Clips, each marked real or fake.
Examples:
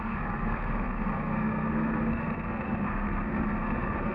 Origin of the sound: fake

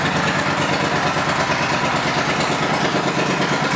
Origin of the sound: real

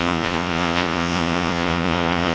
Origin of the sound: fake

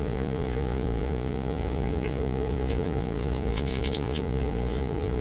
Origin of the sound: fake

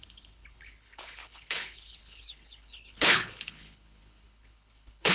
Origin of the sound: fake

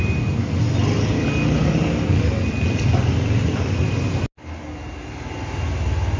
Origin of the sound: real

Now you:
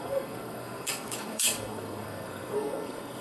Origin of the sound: fake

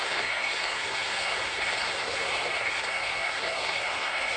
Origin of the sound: fake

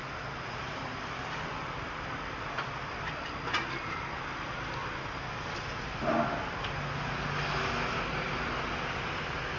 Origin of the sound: real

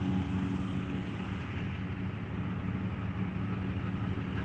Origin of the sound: real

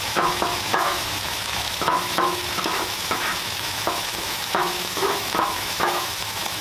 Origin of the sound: fake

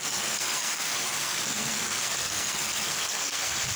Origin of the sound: fake